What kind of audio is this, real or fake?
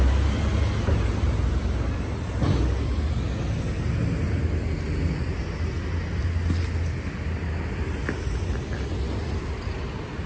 real